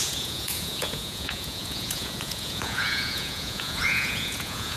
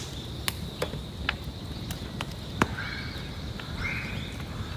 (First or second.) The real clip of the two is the second